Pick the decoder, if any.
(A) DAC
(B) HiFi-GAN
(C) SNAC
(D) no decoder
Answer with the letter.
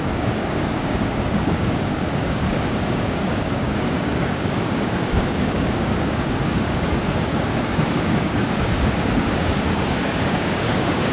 A